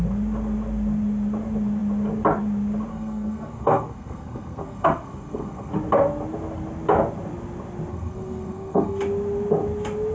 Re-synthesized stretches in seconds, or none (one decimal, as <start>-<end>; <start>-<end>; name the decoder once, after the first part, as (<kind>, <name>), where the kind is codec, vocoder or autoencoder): 2.9-5.7 (codec, SNAC); 7.9-9.0